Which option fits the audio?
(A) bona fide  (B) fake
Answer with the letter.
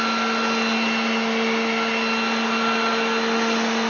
A